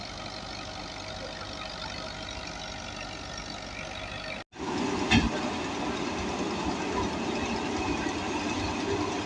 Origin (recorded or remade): recorded